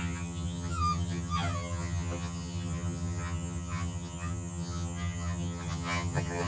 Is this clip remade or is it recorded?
remade